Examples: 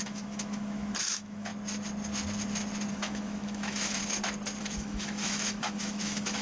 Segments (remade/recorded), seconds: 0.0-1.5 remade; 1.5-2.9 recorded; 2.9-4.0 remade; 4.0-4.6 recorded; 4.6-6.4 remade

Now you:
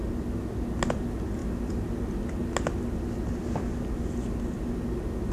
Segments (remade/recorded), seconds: 0.0-5.3 recorded

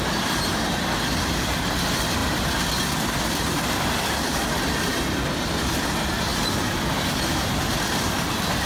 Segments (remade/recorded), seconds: 0.0-8.7 recorded

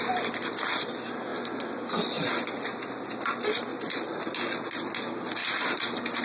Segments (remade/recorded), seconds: 0.0-1.3 recorded; 1.3-2.3 remade; 2.3-3.7 recorded; 3.7-4.3 remade; 4.3-5.4 recorded; 5.4-6.2 remade

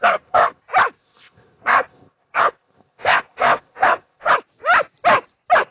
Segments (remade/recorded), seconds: 0.0-0.6 remade; 0.6-1.0 recorded; 1.0-4.3 remade; 4.3-5.7 recorded

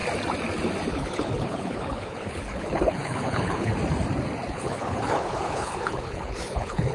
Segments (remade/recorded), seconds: 0.0-0.9 recorded; 0.9-3.7 remade; 3.7-4.5 recorded; 4.5-6.9 remade